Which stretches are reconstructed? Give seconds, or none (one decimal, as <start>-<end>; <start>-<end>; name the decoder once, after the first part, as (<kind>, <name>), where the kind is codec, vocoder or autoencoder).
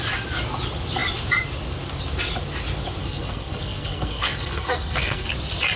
3.0-5.3 (codec, SNAC)